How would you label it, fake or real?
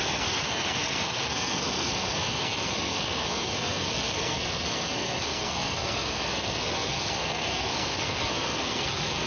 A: fake